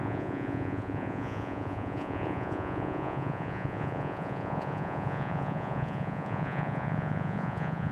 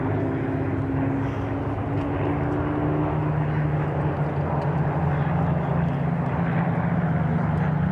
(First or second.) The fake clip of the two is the first